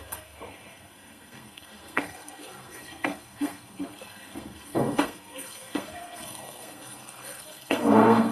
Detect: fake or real fake